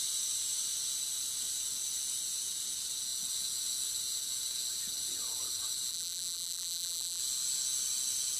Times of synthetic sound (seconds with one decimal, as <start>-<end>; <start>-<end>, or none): 5.9-7.2